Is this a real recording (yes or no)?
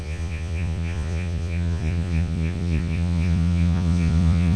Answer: no